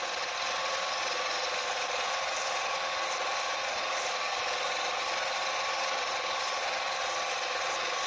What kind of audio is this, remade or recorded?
recorded